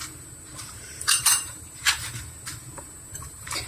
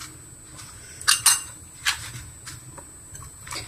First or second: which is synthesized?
first